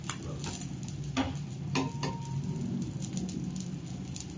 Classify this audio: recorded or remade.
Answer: recorded